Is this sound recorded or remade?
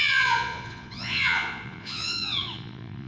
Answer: remade